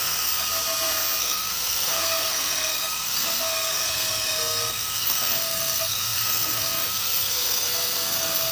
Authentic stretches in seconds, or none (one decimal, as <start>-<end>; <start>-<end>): 0.5-1.2